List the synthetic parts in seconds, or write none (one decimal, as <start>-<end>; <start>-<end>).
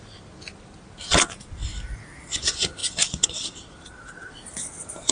2.8-4.3